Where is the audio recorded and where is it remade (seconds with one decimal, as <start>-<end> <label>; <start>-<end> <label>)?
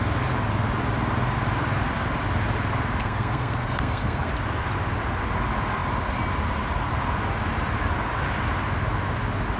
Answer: 0.0-3.0 recorded; 3.0-4.3 remade; 4.3-9.6 recorded